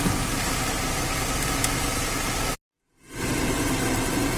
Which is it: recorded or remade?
recorded